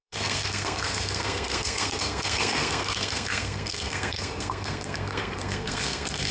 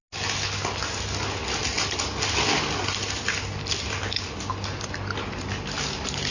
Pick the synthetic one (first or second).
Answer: first